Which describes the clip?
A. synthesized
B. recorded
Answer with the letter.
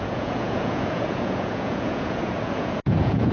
A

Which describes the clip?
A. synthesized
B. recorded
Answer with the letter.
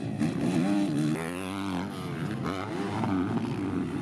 B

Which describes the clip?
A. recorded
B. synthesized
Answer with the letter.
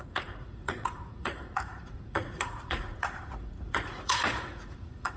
B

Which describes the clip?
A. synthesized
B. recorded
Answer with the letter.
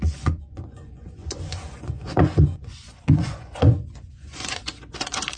A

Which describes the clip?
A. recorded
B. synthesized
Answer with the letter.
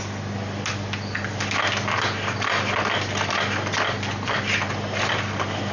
A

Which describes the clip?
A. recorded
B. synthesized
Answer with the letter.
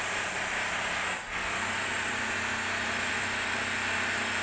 A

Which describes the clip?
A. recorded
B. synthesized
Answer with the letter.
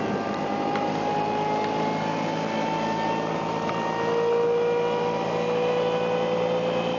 A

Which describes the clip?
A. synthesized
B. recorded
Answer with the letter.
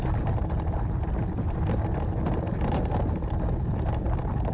B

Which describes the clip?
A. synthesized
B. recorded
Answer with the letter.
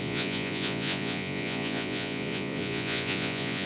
A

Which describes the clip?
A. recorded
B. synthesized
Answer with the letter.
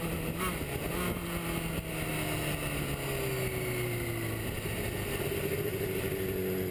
A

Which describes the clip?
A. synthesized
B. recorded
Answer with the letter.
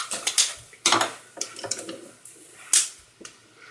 B